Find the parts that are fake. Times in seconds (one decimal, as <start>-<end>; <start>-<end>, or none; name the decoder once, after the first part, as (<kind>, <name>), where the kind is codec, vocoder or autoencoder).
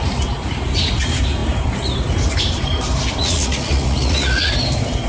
3.2-4.5 (vocoder, Vocos)